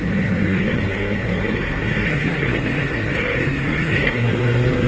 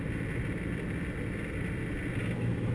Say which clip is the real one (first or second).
second